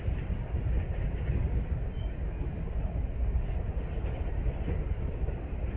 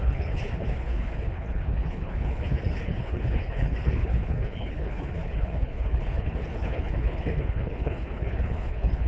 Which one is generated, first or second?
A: second